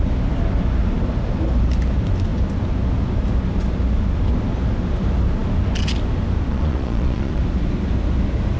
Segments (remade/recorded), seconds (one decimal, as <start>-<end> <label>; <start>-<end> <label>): 0.0-6.5 recorded; 6.5-7.4 remade; 7.4-8.6 recorded